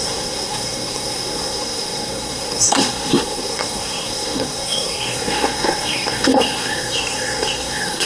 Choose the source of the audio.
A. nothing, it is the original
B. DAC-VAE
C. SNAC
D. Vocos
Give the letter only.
C